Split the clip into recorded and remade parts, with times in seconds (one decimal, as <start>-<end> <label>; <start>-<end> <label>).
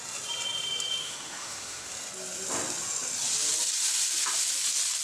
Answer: 0.0-1.0 recorded; 1.0-1.9 remade; 1.9-5.0 recorded